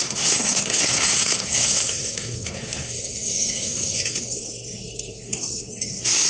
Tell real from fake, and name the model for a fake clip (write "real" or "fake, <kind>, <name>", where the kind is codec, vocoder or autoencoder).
fake, codec, SNAC